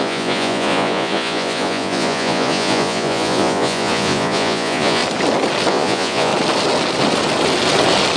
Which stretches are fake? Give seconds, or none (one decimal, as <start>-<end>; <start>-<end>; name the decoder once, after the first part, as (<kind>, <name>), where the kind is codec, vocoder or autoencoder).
0.0-5.0 (vocoder, Vocos); 5.7-6.3